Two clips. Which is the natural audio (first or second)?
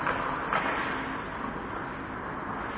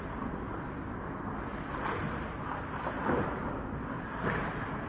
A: first